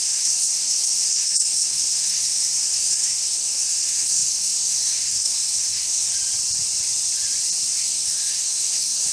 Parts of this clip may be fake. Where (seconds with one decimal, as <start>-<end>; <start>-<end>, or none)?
0.0-6.1; 7.8-9.1